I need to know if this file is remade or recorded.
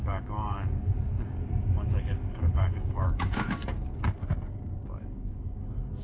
remade